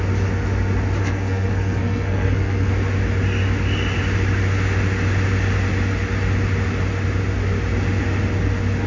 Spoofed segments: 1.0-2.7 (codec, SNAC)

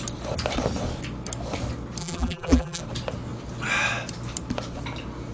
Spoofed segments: 2.0-2.8 (vocoder, BigVGAN v2)